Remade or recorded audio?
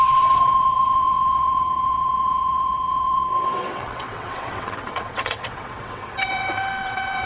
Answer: remade